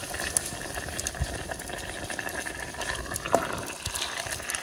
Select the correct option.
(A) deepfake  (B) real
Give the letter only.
B